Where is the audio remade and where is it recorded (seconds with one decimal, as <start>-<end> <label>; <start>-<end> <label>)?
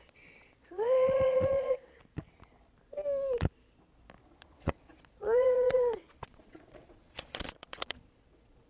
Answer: 0.0-2.0 remade; 2.0-4.2 recorded; 4.2-8.7 remade